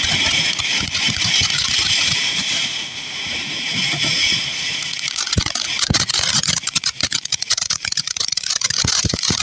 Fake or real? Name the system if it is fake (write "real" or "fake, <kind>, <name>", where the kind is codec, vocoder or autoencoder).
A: fake, vocoder, Vocos